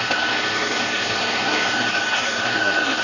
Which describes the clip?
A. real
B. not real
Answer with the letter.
B